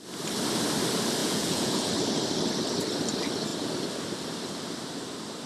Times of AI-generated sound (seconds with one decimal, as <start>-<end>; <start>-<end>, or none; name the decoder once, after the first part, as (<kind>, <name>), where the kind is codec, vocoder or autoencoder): 1.2-1.9 (vocoder, Vocos)